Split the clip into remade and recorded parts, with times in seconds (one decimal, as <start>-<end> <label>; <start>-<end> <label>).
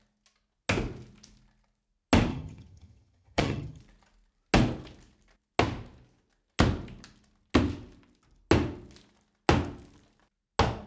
0.0-2.3 recorded; 2.3-3.8 remade; 3.8-10.9 recorded